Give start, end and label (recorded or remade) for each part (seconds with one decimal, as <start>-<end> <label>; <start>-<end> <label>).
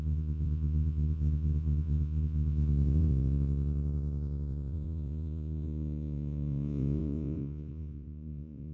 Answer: 0.0-8.7 remade